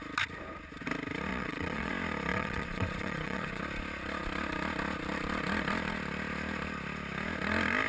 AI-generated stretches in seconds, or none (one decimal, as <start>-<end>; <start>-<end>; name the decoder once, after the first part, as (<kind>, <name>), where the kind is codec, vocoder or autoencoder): 1.3-1.9 (vocoder, WaveNeXt); 2.3-3.6